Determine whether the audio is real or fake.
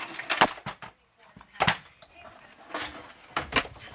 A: real